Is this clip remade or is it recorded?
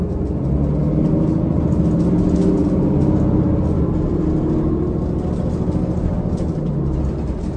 recorded